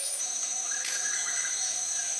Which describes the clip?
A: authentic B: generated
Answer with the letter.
B